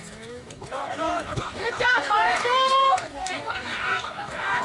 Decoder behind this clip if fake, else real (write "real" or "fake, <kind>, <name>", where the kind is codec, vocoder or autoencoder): fake, codec, DAC